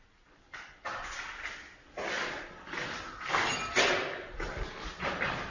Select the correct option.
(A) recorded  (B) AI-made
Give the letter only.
A